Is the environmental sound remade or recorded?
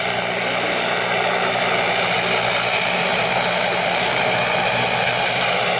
recorded